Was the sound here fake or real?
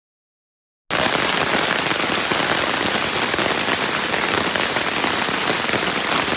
real